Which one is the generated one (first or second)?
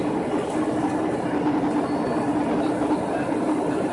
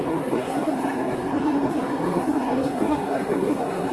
second